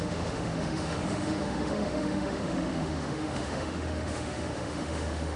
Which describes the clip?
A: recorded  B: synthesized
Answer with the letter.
B